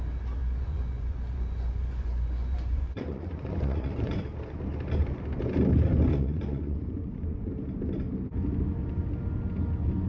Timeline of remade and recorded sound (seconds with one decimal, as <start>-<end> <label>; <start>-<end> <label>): 0.0-0.4 recorded; 0.4-4.2 remade; 4.2-6.1 recorded; 6.1-7.5 remade; 7.5-10.1 recorded

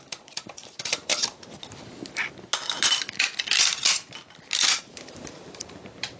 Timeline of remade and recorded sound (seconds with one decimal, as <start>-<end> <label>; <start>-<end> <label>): 0.0-1.1 remade; 1.1-4.8 recorded; 4.8-6.2 remade